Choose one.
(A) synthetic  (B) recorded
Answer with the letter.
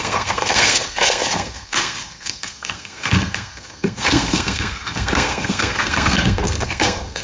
A